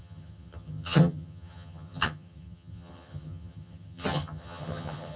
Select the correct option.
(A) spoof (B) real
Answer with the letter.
A